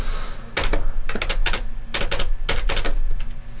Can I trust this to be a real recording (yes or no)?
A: yes